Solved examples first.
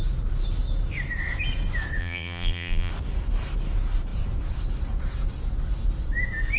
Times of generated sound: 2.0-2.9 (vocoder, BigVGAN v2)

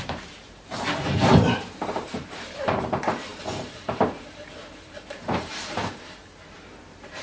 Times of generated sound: 0.0-7.2 (vocoder, BigVGAN v2)

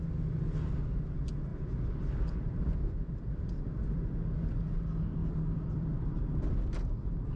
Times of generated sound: 1.5-4.0 (vocoder, BigVGAN v2); 5.2-6.5

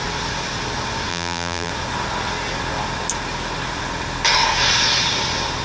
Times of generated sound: 1.1-1.7 (vocoder, BigVGAN v2)